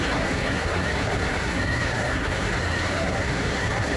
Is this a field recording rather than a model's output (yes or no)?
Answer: no